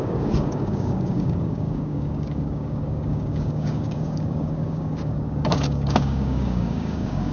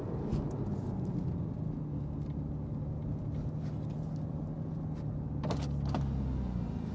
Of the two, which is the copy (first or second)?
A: first